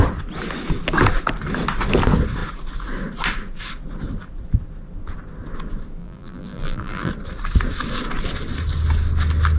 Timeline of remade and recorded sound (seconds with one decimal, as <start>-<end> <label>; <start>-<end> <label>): 0.0-6.0 recorded; 6.0-7.1 remade; 7.1-9.6 recorded